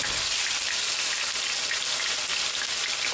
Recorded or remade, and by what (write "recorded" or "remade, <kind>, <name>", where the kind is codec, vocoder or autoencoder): recorded